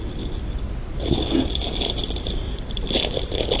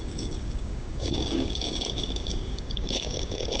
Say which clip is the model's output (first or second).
second